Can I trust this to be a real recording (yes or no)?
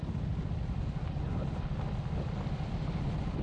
yes